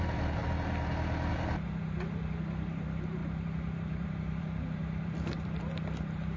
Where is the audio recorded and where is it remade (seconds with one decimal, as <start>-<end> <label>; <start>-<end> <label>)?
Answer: 0.0-0.4 remade; 0.4-1.3 recorded; 1.3-6.4 remade